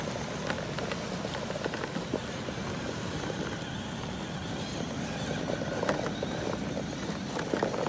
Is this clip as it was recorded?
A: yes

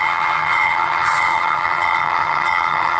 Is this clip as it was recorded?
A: no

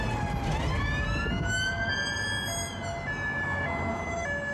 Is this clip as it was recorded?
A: yes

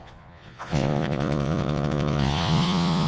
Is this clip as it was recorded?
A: no